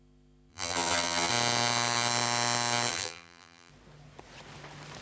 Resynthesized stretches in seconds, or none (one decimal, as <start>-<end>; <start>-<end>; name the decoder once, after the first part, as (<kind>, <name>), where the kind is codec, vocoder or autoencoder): 0.5-1.3 (vocoder, BigVGAN v2); 2.9-3.7